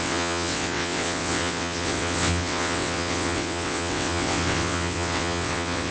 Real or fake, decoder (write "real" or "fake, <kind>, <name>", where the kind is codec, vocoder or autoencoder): fake, vocoder, WaveNeXt